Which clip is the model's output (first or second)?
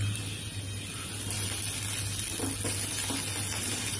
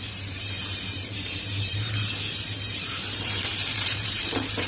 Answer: second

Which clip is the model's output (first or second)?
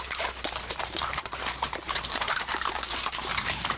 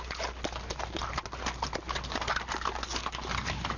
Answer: first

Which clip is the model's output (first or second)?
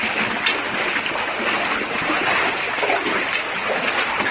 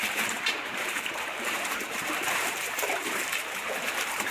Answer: second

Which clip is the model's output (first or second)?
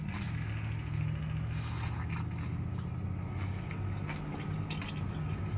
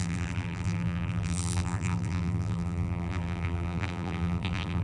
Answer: second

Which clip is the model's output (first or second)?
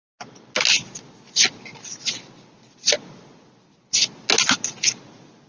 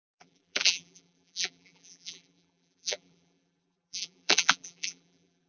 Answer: second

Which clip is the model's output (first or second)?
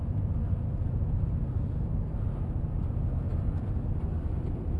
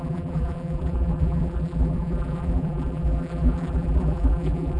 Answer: second